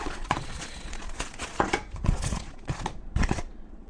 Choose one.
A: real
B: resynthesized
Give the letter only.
B